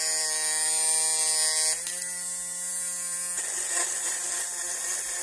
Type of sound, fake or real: real